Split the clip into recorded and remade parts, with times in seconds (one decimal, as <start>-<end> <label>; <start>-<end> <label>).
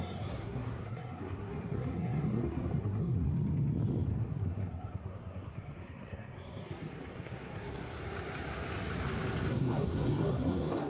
0.0-3.3 remade; 3.3-4.2 recorded; 4.2-8.0 remade; 8.0-9.5 recorded; 9.5-10.9 remade